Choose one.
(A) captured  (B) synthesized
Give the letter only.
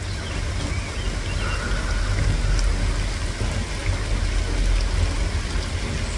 A